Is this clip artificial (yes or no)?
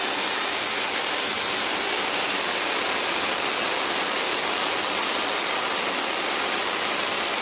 no